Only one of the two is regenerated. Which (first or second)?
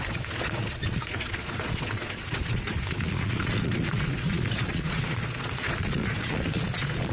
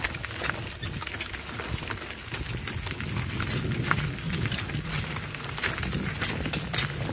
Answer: first